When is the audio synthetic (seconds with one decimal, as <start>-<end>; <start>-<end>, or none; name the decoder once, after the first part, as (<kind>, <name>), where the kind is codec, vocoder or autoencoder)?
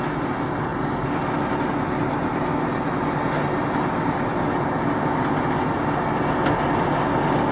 none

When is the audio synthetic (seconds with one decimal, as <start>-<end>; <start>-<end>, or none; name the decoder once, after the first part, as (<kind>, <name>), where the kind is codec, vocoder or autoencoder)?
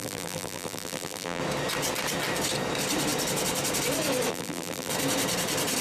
0.0-1.4 (vocoder, BigVGAN v2); 4.3-4.9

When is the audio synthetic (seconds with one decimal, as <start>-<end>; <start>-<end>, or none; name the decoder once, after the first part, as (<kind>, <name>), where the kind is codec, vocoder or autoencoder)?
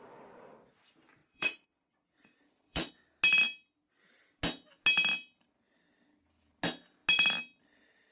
1.2-2.9 (vocoder, Vocos)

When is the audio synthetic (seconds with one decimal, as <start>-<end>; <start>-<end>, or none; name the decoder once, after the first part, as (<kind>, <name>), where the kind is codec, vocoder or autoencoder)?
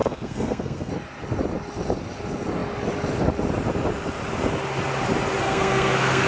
0.0-0.9 (codec, SNAC); 5.4-6.3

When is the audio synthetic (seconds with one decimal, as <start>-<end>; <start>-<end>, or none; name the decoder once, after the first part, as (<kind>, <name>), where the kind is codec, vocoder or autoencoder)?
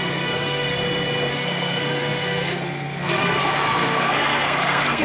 0.0-0.8 (codec, SNAC); 1.3-5.0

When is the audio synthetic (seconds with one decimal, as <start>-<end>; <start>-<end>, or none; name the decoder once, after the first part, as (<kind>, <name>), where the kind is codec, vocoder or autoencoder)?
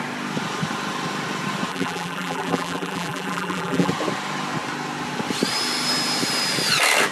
1.7-3.9 (vocoder, BigVGAN v2)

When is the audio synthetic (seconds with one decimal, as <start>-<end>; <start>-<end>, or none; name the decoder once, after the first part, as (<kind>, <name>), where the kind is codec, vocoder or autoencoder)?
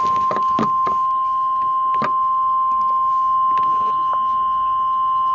none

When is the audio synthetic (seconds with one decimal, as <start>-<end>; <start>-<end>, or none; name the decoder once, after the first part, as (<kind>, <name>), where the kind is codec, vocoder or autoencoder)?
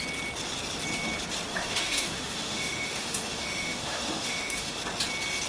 1.5-4.8 (autoencoder, DAC-VAE)